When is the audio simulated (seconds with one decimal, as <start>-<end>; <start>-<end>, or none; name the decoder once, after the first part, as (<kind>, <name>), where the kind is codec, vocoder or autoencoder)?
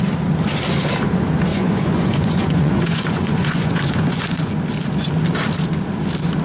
1.5-4.5 (vocoder, Vocos)